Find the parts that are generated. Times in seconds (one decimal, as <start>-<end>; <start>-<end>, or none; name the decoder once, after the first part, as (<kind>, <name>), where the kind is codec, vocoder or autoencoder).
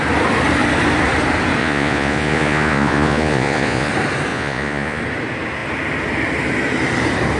1.6-3.9 (vocoder, Vocos); 4.3-5.0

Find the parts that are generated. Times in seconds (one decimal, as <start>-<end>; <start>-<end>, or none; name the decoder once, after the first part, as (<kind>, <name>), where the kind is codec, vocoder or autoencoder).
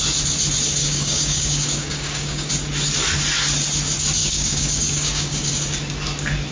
0.8-2.5 (codec, DAC); 4.2-5.5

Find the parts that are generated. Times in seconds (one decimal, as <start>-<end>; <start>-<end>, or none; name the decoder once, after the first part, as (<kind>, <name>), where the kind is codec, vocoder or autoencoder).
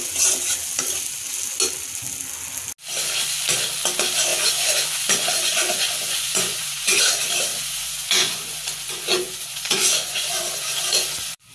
4.3-7.0 (vocoder, Vocos); 7.5-11.5